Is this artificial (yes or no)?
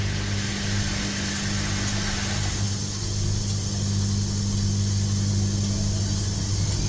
no